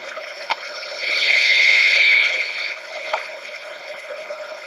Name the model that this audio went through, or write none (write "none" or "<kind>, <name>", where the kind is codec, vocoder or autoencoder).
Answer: codec, HILCodec